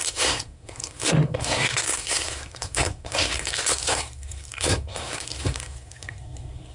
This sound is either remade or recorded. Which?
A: remade